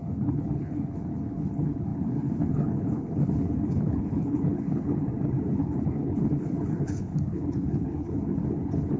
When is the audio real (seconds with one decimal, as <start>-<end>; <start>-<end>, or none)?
5.0-5.5